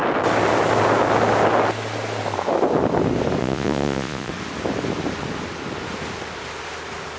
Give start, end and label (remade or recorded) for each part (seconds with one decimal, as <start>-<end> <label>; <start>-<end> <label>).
0.0-3.4 recorded; 3.4-4.3 remade; 4.3-7.2 recorded